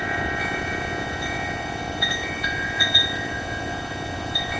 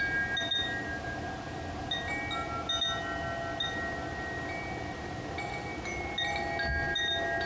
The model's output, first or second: first